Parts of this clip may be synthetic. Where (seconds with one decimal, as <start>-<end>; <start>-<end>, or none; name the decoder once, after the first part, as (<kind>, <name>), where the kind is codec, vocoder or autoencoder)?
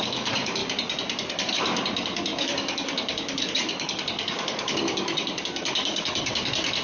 0.0-0.6 (codec, DAC); 1.5-6.8